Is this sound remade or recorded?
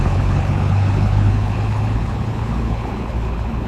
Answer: remade